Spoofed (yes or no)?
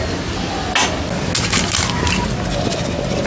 no